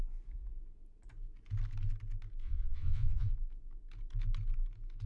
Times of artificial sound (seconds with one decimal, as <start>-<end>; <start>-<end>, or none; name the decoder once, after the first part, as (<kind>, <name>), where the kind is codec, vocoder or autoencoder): 2.4-3.3 (vocoder, WaveNeXt)